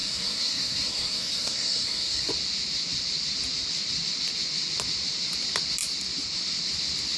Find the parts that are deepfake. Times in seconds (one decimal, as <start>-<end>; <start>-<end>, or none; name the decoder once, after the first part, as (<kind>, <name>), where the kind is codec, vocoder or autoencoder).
0.0-2.3 (codec, SNAC)